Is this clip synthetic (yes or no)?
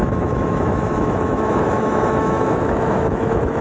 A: yes